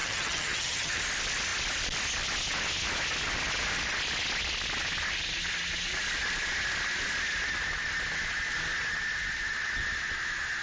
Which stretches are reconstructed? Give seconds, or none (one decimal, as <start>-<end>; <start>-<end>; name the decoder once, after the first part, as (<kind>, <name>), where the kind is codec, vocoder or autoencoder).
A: 0.0-1.0 (vocoder, HiFi-GAN)